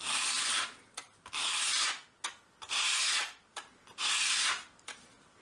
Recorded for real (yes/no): yes